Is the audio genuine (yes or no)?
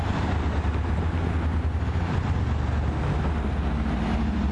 yes